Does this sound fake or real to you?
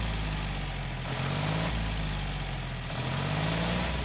real